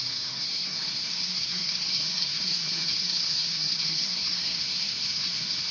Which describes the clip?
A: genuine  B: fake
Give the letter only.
B